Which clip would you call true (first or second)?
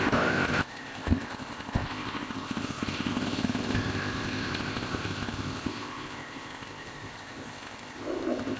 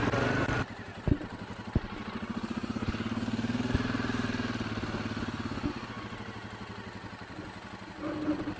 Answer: second